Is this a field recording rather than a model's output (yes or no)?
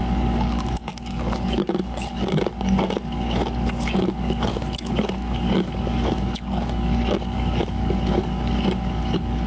no